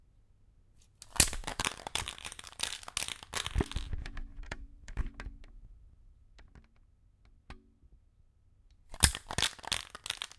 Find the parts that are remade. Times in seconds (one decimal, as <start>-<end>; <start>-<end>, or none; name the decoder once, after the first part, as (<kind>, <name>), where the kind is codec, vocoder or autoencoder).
1.5-2.7 (vocoder, BigVGAN v2); 4.3-5.0